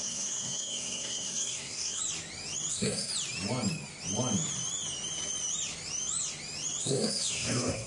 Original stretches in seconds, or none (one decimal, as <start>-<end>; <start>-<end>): 2.0-2.7; 3.1-6.8